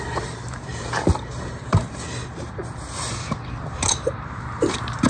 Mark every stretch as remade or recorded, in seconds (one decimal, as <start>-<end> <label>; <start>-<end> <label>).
0.0-0.7 remade; 0.7-1.3 recorded; 1.3-2.6 remade; 2.6-3.9 recorded; 3.9-5.1 remade